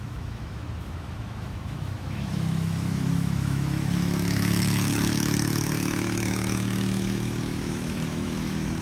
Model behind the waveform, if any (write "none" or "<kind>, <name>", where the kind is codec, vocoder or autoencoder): autoencoder, DAC-VAE